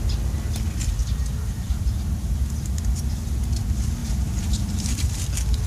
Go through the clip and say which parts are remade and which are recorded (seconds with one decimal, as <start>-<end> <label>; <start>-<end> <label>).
0.0-1.0 recorded; 1.0-2.8 remade; 2.8-4.0 recorded; 4.0-5.2 remade; 5.2-5.7 recorded